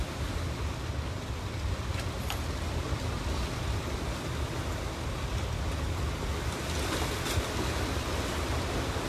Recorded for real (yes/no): yes